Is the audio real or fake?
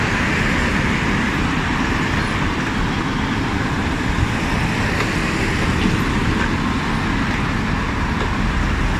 real